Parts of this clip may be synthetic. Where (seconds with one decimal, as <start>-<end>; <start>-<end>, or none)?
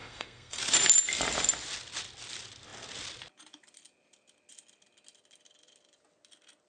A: 0.0-0.6